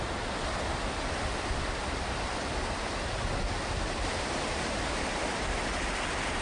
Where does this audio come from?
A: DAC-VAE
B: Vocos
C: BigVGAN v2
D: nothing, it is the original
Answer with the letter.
D